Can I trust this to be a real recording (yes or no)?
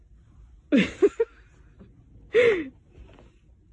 yes